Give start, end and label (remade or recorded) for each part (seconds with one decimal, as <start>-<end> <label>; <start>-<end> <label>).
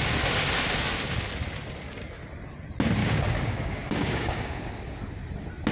0.0-3.0 recorded; 3.0-4.7 remade; 4.7-5.7 recorded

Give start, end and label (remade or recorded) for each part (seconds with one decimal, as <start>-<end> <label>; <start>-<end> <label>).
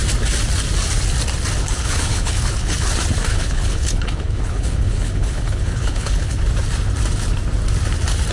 0.0-1.7 recorded; 1.7-2.9 remade; 2.9-3.3 recorded; 3.3-6.4 remade; 6.4-8.3 recorded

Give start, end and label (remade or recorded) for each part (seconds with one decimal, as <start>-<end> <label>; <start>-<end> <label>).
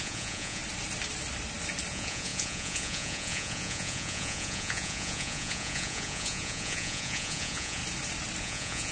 0.0-0.6 remade; 0.6-1.9 recorded; 1.9-7.8 remade; 7.8-8.4 recorded; 8.4-8.9 remade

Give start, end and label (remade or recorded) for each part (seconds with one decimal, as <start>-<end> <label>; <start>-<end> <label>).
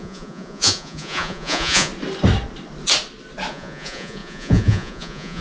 0.0-1.9 remade; 1.9-3.5 recorded; 3.5-5.4 remade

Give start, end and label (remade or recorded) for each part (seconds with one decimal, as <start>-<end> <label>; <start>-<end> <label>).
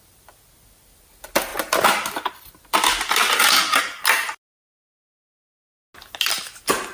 0.0-6.9 recorded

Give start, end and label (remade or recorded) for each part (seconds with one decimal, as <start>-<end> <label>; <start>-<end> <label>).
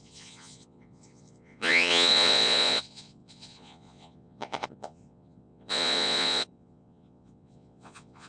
0.0-8.3 remade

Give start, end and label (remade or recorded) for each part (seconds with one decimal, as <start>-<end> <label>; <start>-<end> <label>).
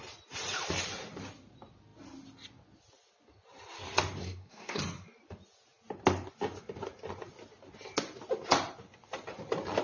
0.0-4.2 recorded; 4.2-4.8 remade; 4.8-9.8 recorded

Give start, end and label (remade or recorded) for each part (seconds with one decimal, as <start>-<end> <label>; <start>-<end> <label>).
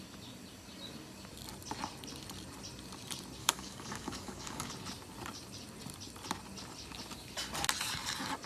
0.0-3.4 recorded; 3.4-4.7 remade; 4.7-8.5 recorded